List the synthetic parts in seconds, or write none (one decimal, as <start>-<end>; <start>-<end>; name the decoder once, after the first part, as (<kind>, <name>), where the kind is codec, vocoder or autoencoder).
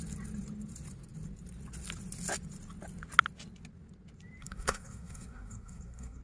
4.4-6.2 (codec, SNAC)